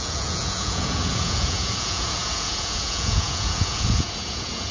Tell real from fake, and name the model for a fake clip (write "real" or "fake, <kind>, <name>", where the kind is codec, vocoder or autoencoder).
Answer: fake, vocoder, Vocos